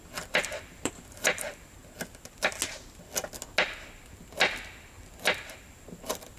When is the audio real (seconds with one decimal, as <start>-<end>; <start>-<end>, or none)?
1.8-5.4

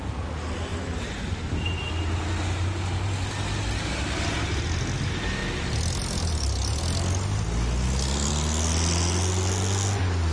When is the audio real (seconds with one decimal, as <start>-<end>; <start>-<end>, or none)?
0.0-10.3

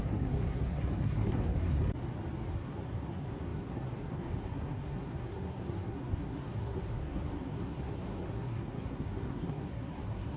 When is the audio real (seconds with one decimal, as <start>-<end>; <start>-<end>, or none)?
1.8-2.5

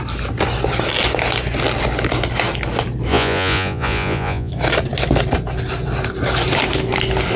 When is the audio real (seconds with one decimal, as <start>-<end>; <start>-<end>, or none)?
0.0-3.1; 4.5-7.4

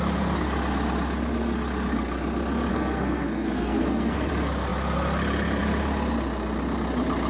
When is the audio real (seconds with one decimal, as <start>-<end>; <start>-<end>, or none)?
0.0-2.7; 4.3-7.3